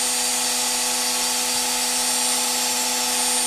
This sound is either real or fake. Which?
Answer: real